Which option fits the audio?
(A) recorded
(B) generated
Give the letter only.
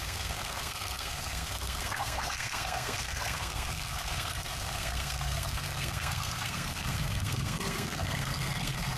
B